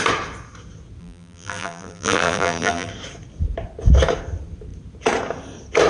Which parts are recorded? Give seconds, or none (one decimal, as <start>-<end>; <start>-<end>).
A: 0.0-1.0; 2.9-5.9

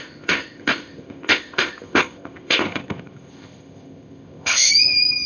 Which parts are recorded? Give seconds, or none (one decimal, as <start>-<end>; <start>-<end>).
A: 4.7-5.3

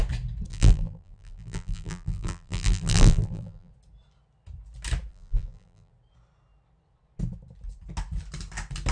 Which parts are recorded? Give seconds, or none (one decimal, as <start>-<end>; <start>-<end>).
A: 0.0-0.5; 3.7-5.1; 5.9-8.9

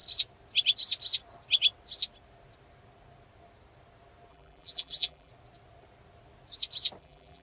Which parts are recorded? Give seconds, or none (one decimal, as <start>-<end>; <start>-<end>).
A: 0.0-4.3; 5.3-7.0